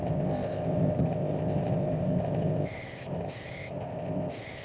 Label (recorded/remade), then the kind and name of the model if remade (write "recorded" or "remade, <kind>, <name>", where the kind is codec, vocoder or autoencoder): remade, codec, ZipCodec